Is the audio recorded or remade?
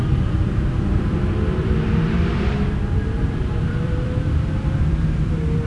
remade